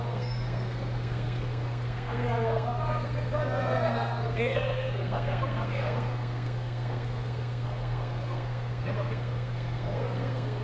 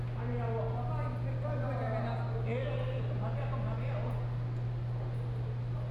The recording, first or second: second